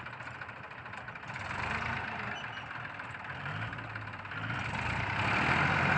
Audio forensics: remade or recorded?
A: remade